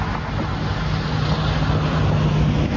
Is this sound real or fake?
real